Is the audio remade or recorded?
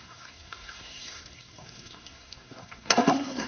remade